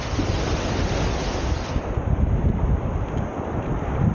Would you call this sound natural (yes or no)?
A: yes